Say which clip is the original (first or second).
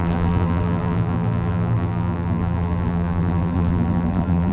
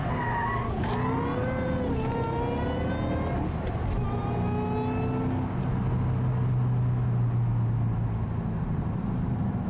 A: second